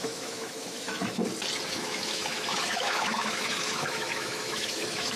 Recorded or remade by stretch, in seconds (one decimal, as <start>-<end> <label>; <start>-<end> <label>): 0.0-1.2 remade; 1.2-1.7 recorded; 1.7-5.2 remade